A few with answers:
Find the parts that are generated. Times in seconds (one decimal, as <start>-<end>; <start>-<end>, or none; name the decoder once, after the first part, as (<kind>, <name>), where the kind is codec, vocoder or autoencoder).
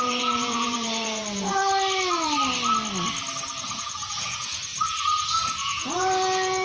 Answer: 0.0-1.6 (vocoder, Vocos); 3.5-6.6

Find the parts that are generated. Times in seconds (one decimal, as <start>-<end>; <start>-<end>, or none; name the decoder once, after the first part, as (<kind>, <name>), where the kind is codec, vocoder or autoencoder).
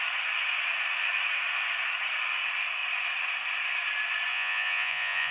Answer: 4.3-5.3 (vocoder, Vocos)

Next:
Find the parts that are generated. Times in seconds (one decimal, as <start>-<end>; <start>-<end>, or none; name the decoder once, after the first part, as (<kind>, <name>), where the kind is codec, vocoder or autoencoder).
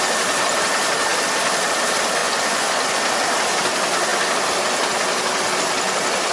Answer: 2.2-3.0 (vocoder, Vocos)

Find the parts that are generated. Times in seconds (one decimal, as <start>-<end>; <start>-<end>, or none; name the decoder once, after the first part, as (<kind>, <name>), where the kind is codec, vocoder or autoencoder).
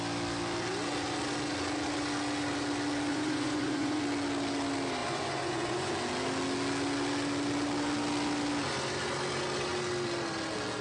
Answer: 3.1-4.0 (vocoder, Vocos); 5.0-5.9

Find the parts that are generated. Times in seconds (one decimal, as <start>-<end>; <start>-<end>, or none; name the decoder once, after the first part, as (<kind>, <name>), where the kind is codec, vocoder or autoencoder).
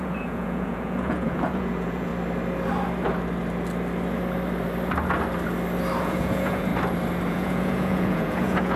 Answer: 0.0-2.1 (vocoder, Vocos); 6.0-6.7; 7.3-8.8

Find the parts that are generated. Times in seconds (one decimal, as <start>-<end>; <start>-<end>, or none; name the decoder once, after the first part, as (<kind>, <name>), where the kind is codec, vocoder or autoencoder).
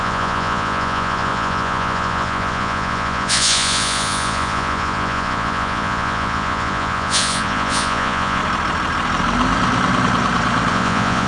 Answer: 0.0-8.4 (vocoder, Vocos); 10.7-11.3